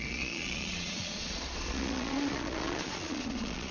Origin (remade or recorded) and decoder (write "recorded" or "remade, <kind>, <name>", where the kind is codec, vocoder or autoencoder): remade, vocoder, Vocos